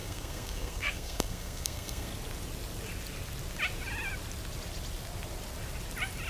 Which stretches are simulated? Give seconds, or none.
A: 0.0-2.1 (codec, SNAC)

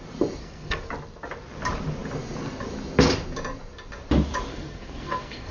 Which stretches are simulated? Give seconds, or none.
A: 0.4-0.9 (codec, SNAC); 4.5-5.5